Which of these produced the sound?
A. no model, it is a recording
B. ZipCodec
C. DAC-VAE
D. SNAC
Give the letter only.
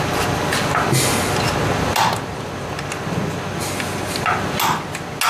A